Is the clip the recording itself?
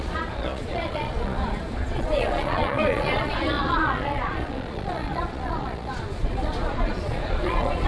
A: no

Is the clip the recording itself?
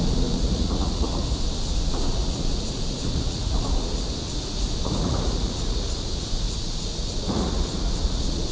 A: no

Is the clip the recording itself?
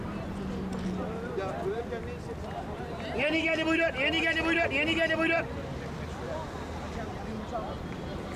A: yes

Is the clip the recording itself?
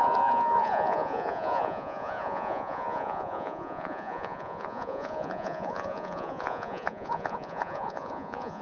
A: no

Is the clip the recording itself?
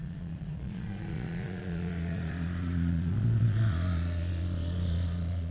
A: no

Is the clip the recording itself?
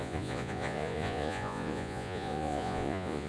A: no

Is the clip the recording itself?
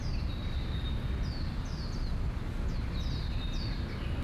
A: yes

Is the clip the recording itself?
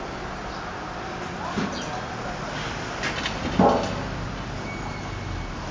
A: yes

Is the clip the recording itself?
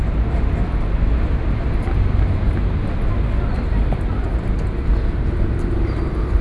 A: yes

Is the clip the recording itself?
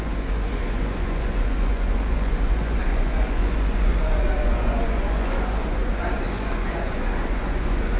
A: no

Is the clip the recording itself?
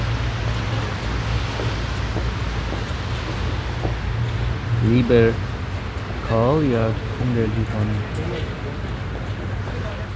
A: yes